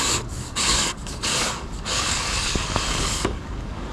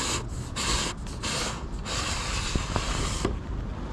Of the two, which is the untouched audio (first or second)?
second